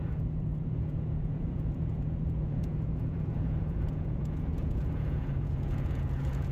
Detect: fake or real fake